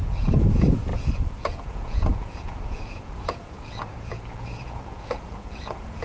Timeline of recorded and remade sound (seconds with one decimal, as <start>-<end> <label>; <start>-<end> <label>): 0.0-6.0 remade